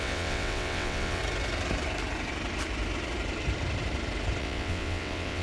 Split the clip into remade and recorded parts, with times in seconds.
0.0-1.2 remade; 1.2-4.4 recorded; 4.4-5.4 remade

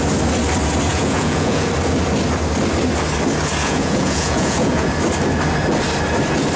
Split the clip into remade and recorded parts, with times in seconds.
0.0-0.9 recorded; 0.9-1.7 remade; 1.7-3.6 recorded; 3.6-4.9 remade; 4.9-6.6 recorded

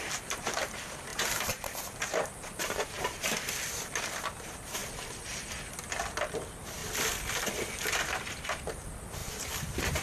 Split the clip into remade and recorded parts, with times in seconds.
0.0-4.8 remade; 4.8-5.8 recorded; 5.8-6.8 remade; 6.8-7.9 recorded; 7.9-10.0 remade

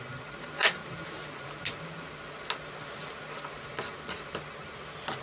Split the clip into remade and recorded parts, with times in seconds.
0.0-5.2 recorded

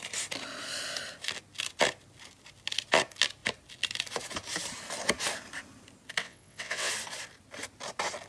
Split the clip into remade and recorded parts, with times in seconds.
0.0-6.2 recorded; 6.2-6.9 remade; 6.9-8.3 recorded

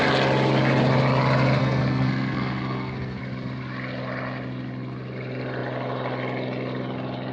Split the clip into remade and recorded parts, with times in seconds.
0.0-1.6 recorded; 1.6-3.2 remade; 3.2-7.3 recorded